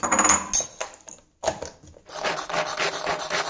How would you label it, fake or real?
real